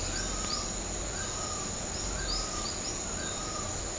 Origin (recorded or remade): recorded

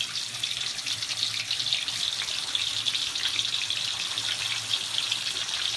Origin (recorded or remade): recorded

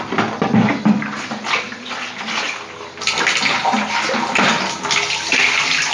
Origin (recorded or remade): recorded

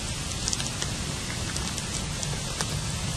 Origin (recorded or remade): recorded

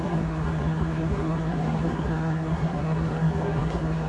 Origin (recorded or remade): remade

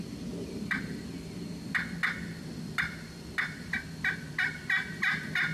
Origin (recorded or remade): recorded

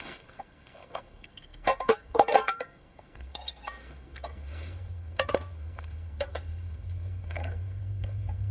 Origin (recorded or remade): remade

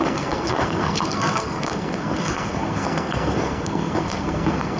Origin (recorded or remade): remade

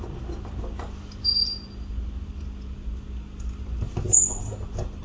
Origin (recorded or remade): recorded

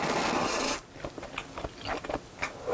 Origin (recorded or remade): recorded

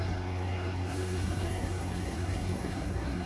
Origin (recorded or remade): remade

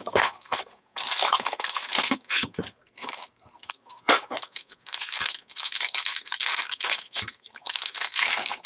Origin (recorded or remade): remade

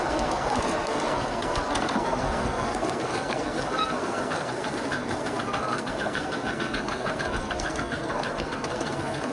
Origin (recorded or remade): remade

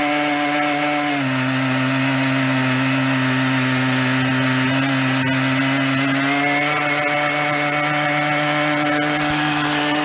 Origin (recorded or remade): recorded